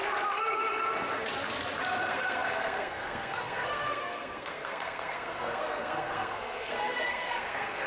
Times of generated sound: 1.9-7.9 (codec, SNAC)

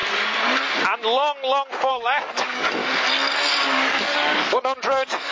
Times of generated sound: 1.9-2.8 (codec, DAC); 3.6-5.3

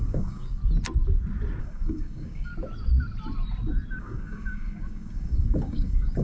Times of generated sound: 0.0-0.6 (codec, DAC); 1.6-2.5; 4.0-6.2

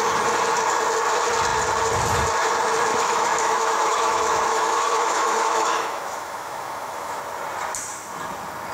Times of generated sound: 2.9-7.2 (autoencoder, DAC-VAE)